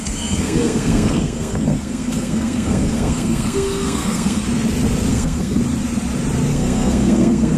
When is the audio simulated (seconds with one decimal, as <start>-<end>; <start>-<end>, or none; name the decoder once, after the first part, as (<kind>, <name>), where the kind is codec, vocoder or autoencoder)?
0.0-4.4 (codec, SNAC); 5.1-5.6; 6.5-7.6